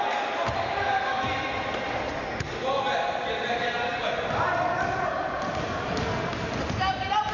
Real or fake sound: real